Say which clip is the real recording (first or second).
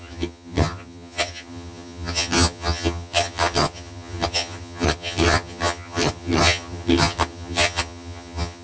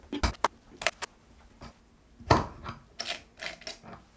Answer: second